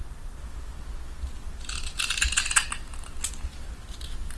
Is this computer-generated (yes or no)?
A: no